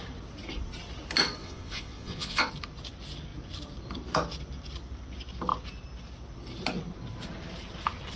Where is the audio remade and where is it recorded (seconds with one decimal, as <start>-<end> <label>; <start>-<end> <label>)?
0.0-1.4 recorded; 1.4-2.5 remade; 2.5-8.2 recorded